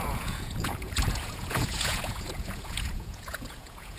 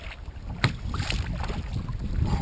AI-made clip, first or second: first